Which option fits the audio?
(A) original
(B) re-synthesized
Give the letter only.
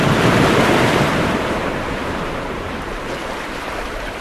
B